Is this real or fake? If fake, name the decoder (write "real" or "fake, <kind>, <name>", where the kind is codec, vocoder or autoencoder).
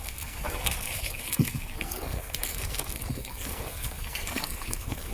fake, codec, SNAC